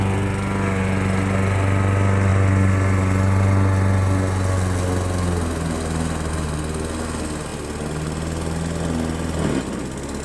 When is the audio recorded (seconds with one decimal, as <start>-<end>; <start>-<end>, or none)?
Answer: 0.0-10.2